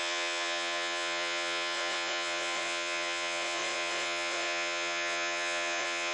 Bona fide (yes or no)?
no